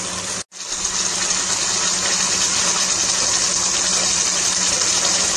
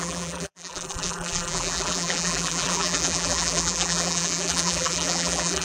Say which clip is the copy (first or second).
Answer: second